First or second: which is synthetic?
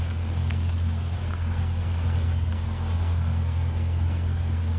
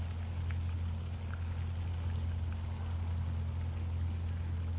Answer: first